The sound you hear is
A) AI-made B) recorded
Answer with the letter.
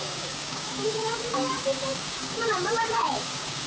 A